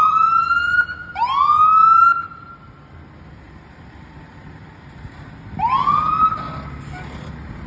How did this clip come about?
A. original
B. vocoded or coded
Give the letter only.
A